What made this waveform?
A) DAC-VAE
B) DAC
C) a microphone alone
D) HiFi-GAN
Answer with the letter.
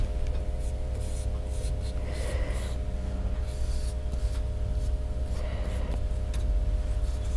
C